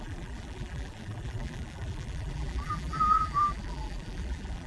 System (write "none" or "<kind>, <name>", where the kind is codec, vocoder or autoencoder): vocoder, BigVGAN v2